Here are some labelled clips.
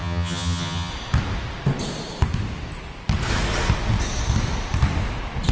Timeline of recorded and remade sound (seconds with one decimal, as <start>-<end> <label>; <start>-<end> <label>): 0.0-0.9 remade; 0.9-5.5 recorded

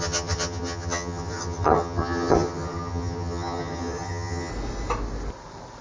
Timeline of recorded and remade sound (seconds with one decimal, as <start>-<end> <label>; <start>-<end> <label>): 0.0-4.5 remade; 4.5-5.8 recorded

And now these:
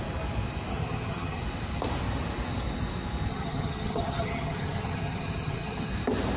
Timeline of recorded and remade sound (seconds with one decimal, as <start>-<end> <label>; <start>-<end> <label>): 0.0-0.7 recorded; 0.7-1.4 remade; 1.4-3.3 recorded; 3.3-5.9 remade; 5.9-6.4 recorded

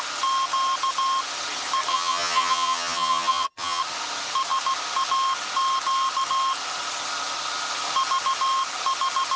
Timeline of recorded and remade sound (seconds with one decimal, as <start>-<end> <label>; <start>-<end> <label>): 0.0-1.9 recorded; 1.9-3.8 remade; 3.8-9.4 recorded

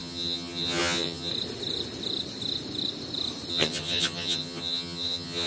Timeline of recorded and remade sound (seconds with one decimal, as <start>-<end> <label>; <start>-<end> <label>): 0.0-1.3 remade; 1.3-3.5 recorded; 3.5-5.5 remade

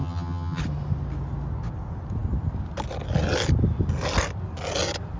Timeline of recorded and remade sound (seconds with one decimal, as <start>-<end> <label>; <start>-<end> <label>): 0.0-0.6 remade; 0.6-5.2 recorded

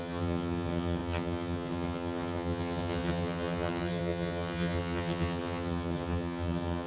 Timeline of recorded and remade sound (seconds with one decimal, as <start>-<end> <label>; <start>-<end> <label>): 0.0-6.9 remade